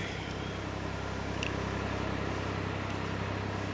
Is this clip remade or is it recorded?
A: recorded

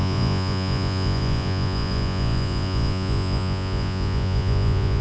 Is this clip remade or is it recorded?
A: remade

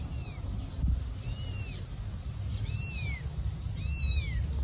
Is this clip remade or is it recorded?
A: recorded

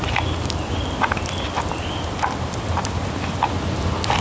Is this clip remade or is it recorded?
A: recorded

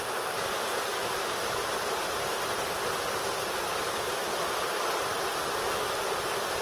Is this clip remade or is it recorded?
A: recorded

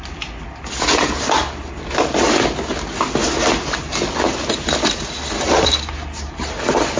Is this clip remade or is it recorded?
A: recorded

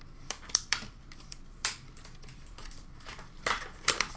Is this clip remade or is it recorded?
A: remade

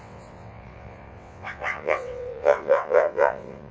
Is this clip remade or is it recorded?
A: remade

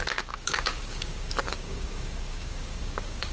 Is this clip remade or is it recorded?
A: remade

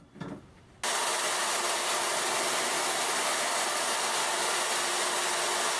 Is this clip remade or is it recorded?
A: recorded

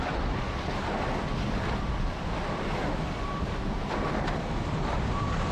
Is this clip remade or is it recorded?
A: remade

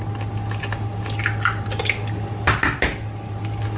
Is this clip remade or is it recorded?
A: recorded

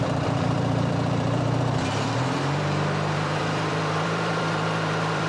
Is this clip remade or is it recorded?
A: remade